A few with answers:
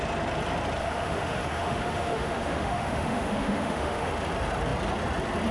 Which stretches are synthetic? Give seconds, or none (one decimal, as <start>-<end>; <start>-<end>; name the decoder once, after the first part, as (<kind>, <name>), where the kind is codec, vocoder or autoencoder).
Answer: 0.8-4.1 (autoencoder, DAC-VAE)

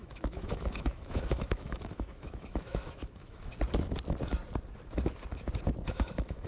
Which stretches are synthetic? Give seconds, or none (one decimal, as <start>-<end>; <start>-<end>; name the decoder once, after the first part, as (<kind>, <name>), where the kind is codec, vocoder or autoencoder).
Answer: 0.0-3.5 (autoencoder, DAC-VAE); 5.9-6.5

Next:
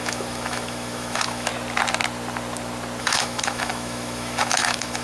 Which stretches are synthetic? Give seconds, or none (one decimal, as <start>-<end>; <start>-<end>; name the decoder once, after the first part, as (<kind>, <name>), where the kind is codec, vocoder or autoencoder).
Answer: 0.0-1.5 (autoencoder, DAC-VAE); 3.0-5.0

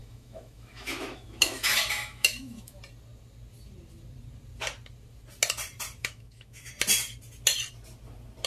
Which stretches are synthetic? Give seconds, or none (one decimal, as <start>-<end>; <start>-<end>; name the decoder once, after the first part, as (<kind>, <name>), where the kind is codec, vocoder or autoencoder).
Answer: 0.0-2.8 (autoencoder, DAC-VAE); 6.0-6.7

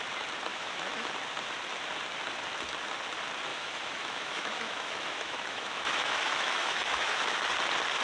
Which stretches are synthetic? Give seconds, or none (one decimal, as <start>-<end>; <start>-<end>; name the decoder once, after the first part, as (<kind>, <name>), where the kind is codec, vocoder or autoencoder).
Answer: 0.5-1.1 (autoencoder, DAC-VAE); 3.5-7.5

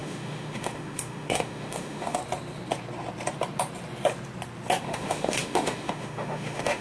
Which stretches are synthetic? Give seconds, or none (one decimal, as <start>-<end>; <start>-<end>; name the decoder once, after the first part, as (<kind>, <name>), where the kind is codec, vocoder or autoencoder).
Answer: 0.0-2.2 (autoencoder, DAC-VAE); 4.8-6.8

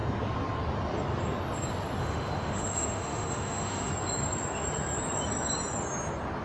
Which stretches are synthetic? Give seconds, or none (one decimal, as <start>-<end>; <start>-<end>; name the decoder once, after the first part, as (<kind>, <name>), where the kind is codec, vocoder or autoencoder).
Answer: 2.0-3.9 (autoencoder, DAC-VAE)

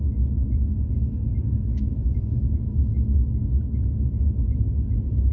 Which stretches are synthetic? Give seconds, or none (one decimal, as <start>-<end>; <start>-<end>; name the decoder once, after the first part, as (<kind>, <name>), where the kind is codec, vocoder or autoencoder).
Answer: 0.0-5.3 (autoencoder, DAC-VAE)